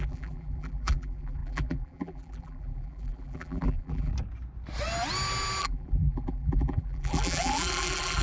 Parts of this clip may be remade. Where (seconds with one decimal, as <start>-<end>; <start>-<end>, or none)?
0.0-4.1; 5.6-8.2